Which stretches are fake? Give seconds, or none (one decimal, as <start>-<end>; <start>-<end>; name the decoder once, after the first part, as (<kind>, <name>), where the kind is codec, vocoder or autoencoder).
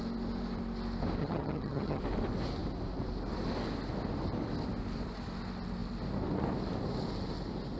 1.2-2.0 (vocoder, HiFi-GAN)